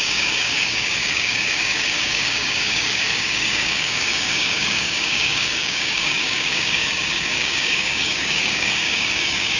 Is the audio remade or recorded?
remade